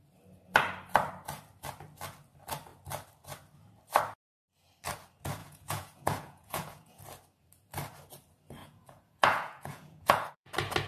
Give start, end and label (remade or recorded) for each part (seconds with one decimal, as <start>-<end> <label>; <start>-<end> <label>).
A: 0.0-5.4 recorded; 5.4-7.0 remade; 7.0-8.6 recorded; 8.6-10.5 remade; 10.5-10.9 recorded